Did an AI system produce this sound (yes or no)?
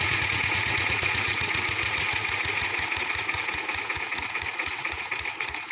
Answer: yes